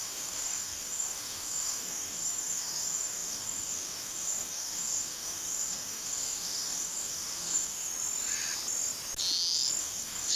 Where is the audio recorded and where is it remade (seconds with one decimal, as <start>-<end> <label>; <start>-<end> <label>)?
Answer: 0.0-7.9 remade; 7.9-9.8 recorded; 9.8-10.4 remade